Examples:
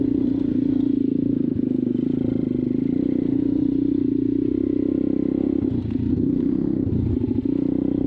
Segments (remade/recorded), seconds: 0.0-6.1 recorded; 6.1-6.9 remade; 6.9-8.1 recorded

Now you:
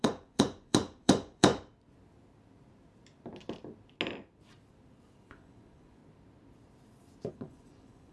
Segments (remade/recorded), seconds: 0.0-1.5 remade; 1.5-5.3 recorded; 5.3-6.0 remade; 6.0-7.3 recorded; 7.3-8.1 remade

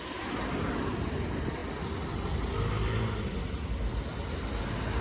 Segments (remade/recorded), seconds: 0.0-5.0 recorded

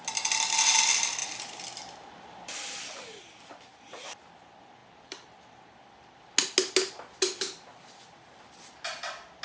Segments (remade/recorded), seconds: 0.0-1.2 recorded; 1.2-3.2 remade; 3.2-4.8 recorded; 4.8-5.6 remade; 5.6-9.4 recorded

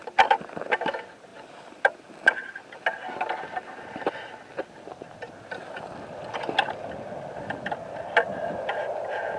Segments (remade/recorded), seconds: 0.0-9.4 recorded

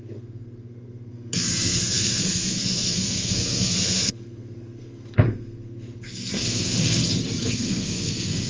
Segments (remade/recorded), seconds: 0.0-7.0 remade; 7.0-7.5 recorded; 7.5-8.5 remade

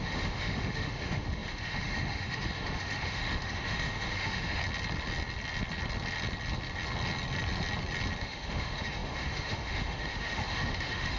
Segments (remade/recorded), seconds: 0.0-4.6 remade; 4.6-8.2 recorded; 8.2-11.2 remade